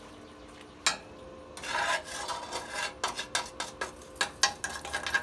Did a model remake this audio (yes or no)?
no